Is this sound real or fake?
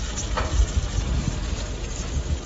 real